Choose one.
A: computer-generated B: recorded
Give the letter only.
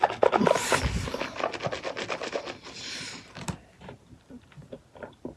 B